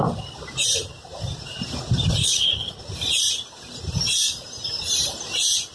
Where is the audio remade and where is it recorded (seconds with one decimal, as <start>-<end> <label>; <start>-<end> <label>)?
0.0-2.2 recorded; 2.2-2.8 remade; 2.8-5.7 recorded